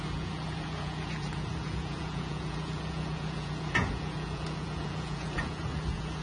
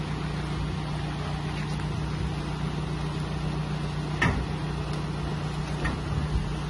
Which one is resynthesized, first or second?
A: first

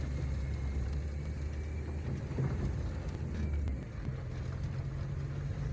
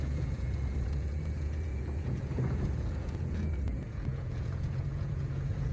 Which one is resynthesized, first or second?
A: second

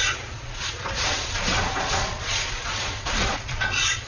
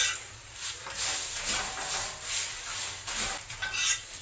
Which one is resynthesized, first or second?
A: first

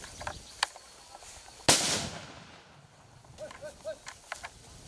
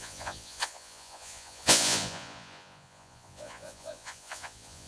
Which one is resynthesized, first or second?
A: second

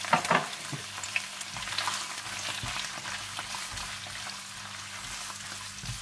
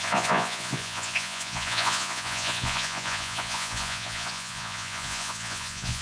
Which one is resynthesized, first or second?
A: second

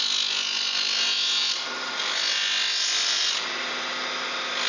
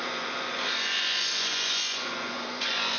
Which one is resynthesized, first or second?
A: second